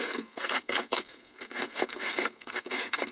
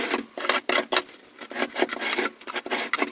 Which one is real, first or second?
second